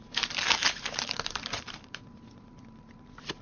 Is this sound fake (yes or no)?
yes